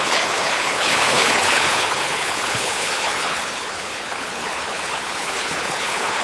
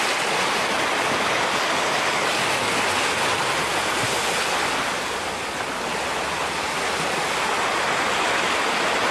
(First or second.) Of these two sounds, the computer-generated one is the first